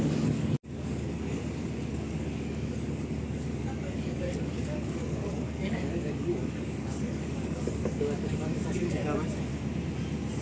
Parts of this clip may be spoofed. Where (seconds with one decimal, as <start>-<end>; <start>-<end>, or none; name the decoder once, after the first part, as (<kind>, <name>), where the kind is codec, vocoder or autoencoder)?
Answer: 0.0-1.4 (codec, DAC); 1.9-9.5

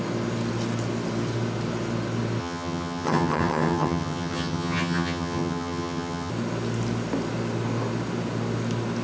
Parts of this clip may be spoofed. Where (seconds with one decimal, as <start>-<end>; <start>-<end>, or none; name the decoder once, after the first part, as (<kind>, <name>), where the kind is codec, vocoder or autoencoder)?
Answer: 2.4-6.3 (vocoder, HiFi-GAN)

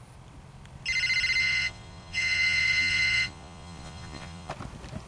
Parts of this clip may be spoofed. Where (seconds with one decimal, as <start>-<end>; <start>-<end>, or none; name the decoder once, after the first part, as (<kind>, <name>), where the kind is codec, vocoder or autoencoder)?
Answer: 1.4-4.5 (vocoder, Vocos)